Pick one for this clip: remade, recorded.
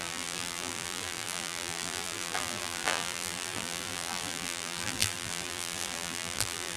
remade